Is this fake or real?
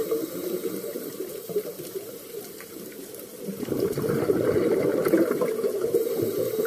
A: fake